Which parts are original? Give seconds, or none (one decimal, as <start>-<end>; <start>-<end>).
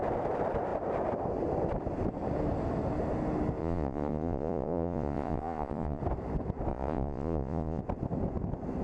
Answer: 0.0-3.6; 6.0-6.7; 7.8-8.8